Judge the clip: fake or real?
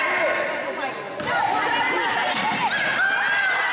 real